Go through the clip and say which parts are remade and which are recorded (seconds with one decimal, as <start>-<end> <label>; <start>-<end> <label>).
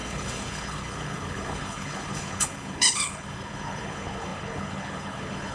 0.0-5.5 remade